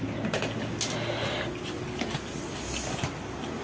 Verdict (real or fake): real